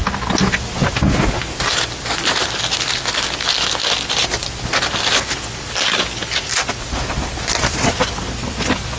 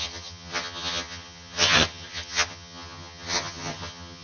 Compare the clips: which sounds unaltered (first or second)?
first